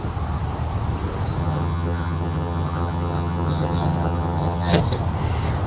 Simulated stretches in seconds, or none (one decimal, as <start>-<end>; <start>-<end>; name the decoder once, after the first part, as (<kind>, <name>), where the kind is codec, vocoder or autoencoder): 1.4-4.8 (vocoder, HiFi-GAN)